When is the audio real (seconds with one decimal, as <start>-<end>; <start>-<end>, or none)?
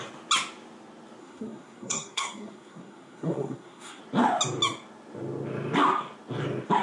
0.0-1.2; 4.0-6.8